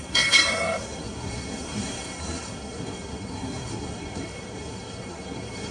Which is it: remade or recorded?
remade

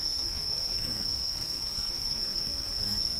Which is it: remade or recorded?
remade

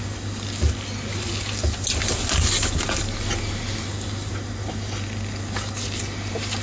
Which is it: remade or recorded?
recorded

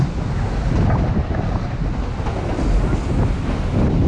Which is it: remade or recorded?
recorded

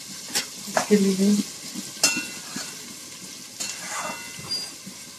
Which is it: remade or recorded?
recorded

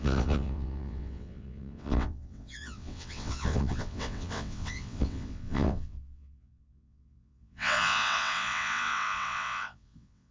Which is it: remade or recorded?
remade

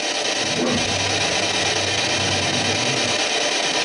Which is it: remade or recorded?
recorded